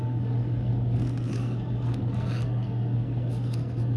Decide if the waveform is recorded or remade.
remade